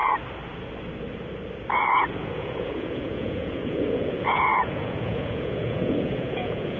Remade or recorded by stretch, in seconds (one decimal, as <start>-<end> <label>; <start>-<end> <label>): 0.0-2.3 recorded; 2.3-6.8 remade